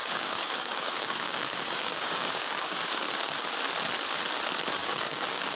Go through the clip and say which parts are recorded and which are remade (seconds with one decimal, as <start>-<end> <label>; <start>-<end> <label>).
0.0-3.1 remade; 3.1-4.8 recorded; 4.8-5.6 remade